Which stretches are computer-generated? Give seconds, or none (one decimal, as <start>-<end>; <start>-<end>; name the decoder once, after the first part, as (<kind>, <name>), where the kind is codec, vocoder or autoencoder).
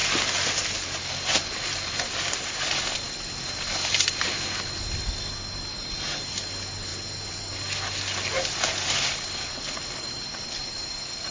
none